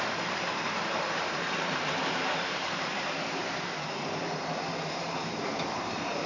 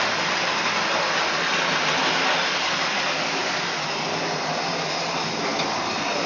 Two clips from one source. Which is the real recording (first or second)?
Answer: second